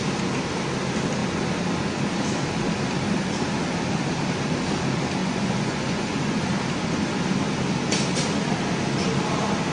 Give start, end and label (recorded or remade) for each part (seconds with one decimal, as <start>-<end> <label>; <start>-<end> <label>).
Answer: 0.0-5.2 recorded; 5.2-6.4 remade; 6.4-9.7 recorded